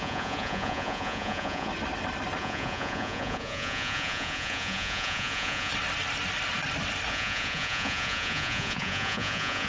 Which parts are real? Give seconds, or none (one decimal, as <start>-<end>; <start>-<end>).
1.7-2.4; 5.7-7.1